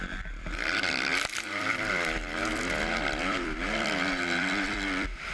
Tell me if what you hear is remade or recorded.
remade